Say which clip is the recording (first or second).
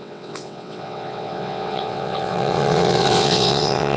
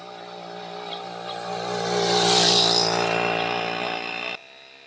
second